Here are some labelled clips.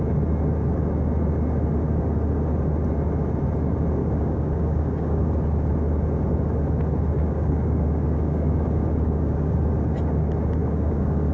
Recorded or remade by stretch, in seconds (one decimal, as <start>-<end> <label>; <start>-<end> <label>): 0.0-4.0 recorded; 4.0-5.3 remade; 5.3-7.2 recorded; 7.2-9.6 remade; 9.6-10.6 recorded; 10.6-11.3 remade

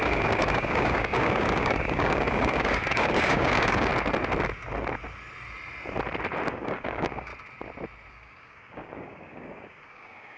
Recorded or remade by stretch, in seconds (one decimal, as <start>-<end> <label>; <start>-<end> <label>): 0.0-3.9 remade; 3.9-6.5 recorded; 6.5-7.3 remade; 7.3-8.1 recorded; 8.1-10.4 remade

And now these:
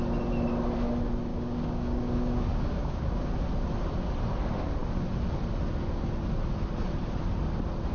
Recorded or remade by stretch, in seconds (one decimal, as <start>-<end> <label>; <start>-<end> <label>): 0.0-1.3 recorded; 1.3-3.3 remade; 3.3-7.9 recorded